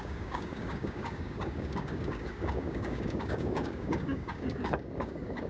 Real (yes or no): no